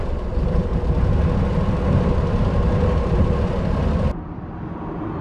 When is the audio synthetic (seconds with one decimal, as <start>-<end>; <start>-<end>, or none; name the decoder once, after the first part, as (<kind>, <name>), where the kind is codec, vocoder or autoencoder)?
0.0-0.7 (vocoder, BigVGAN v2); 3.4-5.2